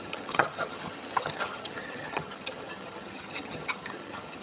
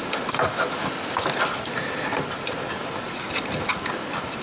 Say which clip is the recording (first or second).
second